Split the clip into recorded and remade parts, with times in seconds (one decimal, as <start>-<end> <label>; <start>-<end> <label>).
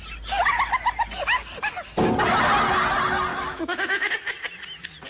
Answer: 0.0-3.3 recorded; 3.3-4.1 remade; 4.1-5.1 recorded